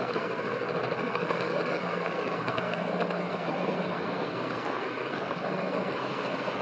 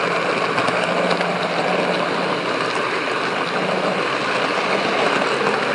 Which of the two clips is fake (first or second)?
first